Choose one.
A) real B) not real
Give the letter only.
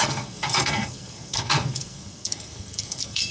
B